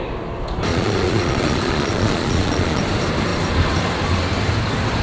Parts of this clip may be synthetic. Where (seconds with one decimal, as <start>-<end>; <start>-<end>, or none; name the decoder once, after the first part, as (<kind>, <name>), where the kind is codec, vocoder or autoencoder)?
0.7-2.8 (vocoder, Vocos)